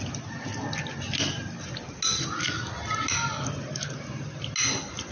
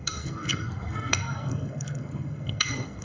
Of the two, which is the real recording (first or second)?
first